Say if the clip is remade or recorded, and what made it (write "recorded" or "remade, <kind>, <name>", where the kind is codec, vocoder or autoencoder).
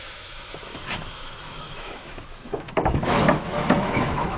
remade, autoencoder, DAC-VAE